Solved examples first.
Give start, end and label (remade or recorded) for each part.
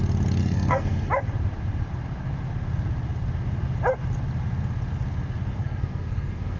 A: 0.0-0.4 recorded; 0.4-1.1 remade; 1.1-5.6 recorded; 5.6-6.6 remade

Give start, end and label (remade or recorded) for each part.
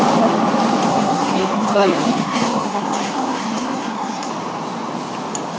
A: 0.0-0.9 recorded; 0.9-4.3 remade; 4.3-5.6 recorded